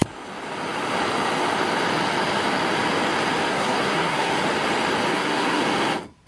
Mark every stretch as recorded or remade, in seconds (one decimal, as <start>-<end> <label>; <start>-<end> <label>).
0.0-3.5 recorded; 3.5-4.3 remade; 4.3-5.1 recorded; 5.1-5.6 remade; 5.6-6.3 recorded